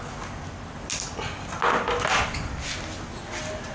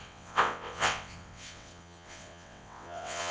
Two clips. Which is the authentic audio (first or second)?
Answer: first